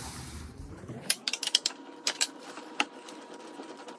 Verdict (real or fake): fake